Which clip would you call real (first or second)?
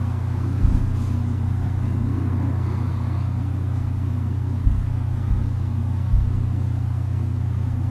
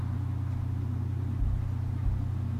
second